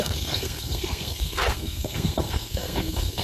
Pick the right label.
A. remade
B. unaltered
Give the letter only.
A